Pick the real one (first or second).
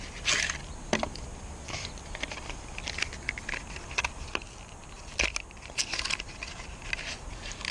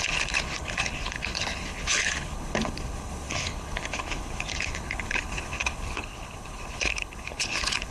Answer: first